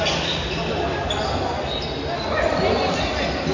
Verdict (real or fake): real